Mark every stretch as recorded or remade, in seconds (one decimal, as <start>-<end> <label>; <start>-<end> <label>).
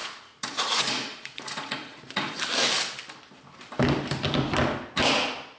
0.0-2.4 remade; 2.4-5.6 recorded